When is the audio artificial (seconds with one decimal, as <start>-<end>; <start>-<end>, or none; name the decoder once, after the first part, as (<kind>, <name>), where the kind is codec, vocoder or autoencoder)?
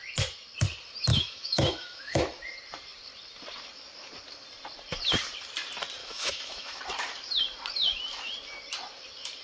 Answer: 1.1-2.2 (autoencoder, DAC-VAE); 6.0-6.8